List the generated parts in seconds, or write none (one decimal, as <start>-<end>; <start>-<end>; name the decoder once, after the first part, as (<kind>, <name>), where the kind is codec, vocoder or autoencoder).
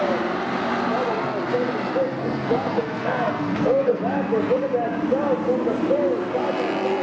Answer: 2.2-4.0 (codec, SNAC)